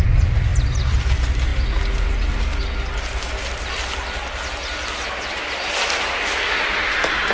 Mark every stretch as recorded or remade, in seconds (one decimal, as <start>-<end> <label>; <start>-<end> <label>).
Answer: 0.0-7.3 recorded